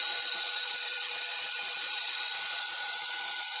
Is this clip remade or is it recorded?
remade